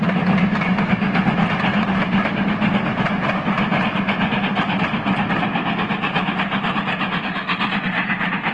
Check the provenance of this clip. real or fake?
real